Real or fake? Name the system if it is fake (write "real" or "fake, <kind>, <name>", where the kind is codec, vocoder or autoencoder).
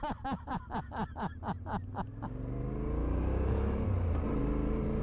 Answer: real